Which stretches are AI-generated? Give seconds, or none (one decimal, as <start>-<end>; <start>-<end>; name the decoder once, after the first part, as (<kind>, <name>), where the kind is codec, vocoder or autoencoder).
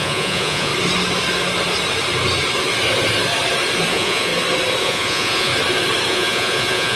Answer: 0.0-0.7 (vocoder, Vocos); 3.9-4.3; 4.8-5.5; 6.1-7.0